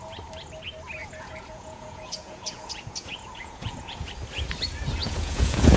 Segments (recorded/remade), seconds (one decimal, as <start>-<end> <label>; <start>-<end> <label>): 0.0-1.0 recorded; 1.0-4.1 remade; 4.1-5.0 recorded; 5.0-5.8 remade